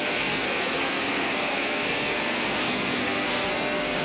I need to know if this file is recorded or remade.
remade